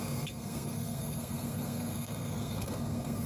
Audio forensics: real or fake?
fake